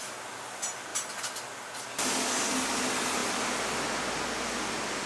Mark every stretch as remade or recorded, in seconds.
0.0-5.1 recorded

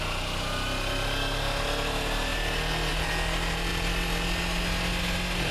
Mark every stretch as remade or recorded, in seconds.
0.0-5.5 recorded

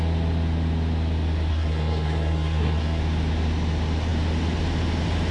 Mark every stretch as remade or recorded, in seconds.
0.0-1.5 recorded; 1.5-3.0 remade; 3.0-5.3 recorded

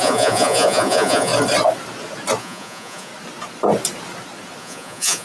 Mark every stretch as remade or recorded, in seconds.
0.0-1.3 remade; 1.3-2.4 recorded; 2.4-3.1 remade; 3.1-4.6 recorded; 4.6-5.2 remade